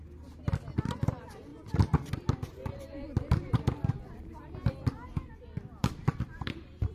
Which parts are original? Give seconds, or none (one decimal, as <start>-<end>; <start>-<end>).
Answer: 0.0-6.3